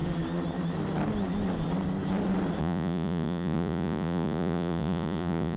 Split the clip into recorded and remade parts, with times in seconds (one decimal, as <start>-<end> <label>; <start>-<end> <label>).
0.0-2.6 recorded; 2.6-5.6 remade

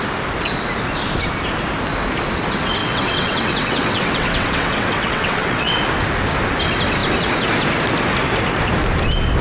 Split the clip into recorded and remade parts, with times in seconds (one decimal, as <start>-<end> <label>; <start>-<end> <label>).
0.0-2.8 recorded; 2.8-5.8 remade; 5.8-9.4 recorded